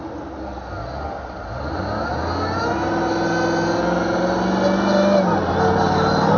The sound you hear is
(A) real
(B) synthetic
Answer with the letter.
A